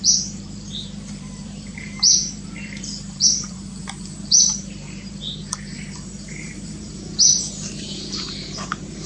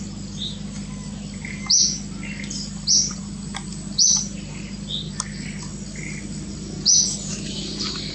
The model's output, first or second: first